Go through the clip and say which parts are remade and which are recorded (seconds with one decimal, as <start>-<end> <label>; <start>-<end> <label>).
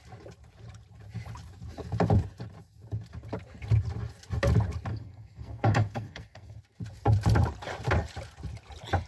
0.0-4.9 recorded; 4.9-6.6 remade; 6.6-9.1 recorded